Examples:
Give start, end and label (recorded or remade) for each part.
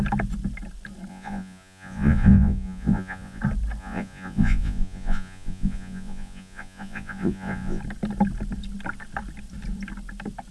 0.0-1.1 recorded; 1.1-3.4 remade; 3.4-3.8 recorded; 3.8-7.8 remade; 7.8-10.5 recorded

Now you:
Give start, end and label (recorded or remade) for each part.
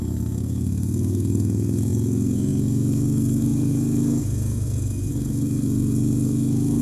0.0-6.8 remade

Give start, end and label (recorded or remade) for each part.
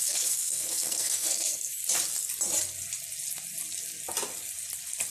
0.0-1.8 remade; 1.8-5.1 recorded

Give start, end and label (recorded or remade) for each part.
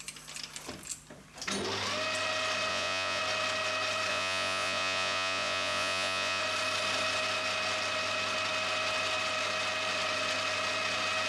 0.0-2.7 recorded; 2.7-3.2 remade; 3.2-4.1 recorded; 4.1-6.4 remade; 6.4-11.3 recorded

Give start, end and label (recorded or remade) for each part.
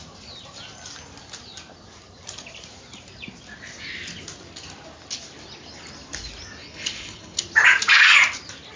0.0-6.6 recorded; 6.6-7.4 remade; 7.4-8.8 recorded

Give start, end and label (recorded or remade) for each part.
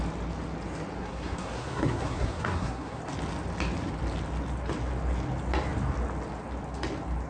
0.0-1.0 recorded; 1.0-3.0 remade; 3.0-7.3 recorded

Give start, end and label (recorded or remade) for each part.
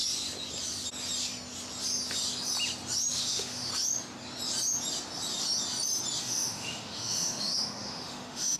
0.0-3.1 recorded; 3.1-3.7 remade; 3.7-6.2 recorded; 6.2-8.6 remade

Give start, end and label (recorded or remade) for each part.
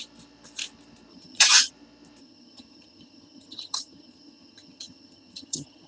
0.0-1.1 recorded; 1.1-1.7 remade; 1.7-2.2 recorded; 2.2-5.9 remade